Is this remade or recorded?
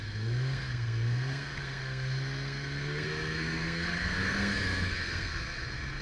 remade